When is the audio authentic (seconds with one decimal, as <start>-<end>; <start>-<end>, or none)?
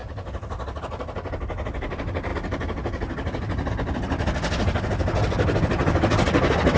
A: 0.0-6.8